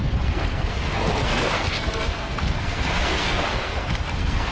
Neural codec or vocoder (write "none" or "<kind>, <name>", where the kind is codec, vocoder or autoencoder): codec, SNAC